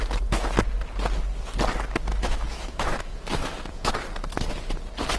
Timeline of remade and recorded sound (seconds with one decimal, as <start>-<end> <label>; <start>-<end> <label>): 0.0-2.1 recorded; 2.1-3.9 remade; 3.9-5.2 recorded